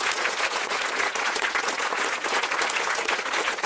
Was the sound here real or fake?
fake